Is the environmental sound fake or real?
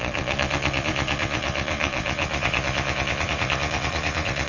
fake